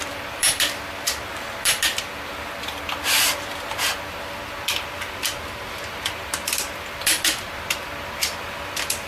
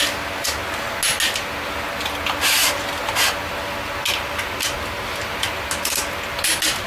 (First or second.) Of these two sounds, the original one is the second